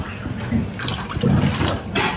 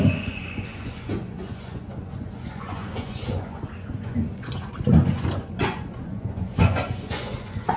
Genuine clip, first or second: first